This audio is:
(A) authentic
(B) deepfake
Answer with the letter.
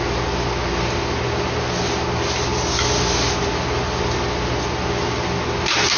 A